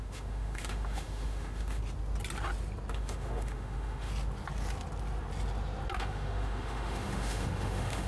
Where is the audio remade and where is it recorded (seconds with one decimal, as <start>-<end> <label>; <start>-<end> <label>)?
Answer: 0.0-1.8 remade; 1.8-2.9 recorded; 2.9-4.1 remade; 4.1-6.0 recorded; 6.0-8.1 remade

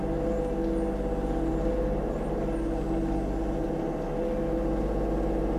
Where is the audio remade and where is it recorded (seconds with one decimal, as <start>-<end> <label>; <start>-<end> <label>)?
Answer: 0.0-5.6 recorded

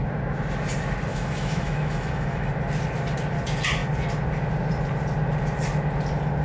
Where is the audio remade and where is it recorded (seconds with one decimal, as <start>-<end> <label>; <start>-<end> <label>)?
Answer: 0.0-1.1 recorded; 1.1-2.5 remade; 2.5-6.4 recorded

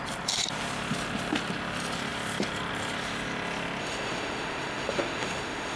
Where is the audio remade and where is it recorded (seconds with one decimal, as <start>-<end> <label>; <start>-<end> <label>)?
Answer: 0.0-3.8 recorded; 3.8-5.8 remade

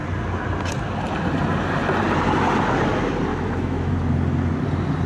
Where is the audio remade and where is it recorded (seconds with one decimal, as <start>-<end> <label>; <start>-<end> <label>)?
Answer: 0.0-3.3 recorded; 3.3-3.9 remade; 3.9-5.1 recorded